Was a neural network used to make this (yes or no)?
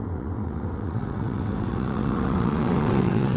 yes